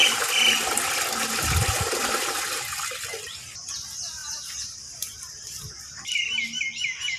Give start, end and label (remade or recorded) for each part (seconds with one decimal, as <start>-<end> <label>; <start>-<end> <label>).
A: 0.0-4.2 recorded; 4.2-6.0 remade; 6.0-7.2 recorded